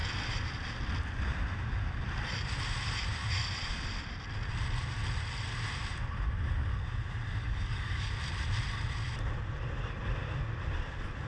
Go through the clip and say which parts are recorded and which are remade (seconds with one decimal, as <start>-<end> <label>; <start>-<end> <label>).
0.0-7.4 recorded; 7.4-8.1 remade; 8.1-11.3 recorded